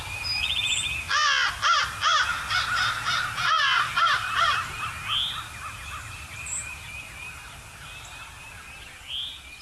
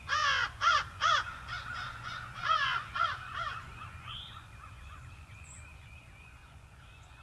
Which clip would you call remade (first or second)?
second